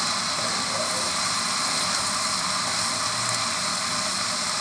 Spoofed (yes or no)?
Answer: no